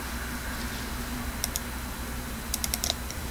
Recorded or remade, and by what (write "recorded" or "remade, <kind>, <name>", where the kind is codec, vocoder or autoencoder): recorded